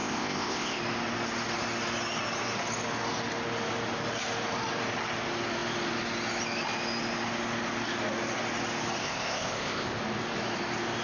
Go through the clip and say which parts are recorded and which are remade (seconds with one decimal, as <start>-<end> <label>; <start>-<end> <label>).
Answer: 0.0-0.8 remade; 0.8-9.0 recorded; 9.0-10.0 remade; 10.0-11.0 recorded